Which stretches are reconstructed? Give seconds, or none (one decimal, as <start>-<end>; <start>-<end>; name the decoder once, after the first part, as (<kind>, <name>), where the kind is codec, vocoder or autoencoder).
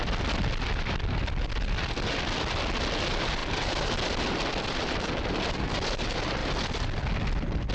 none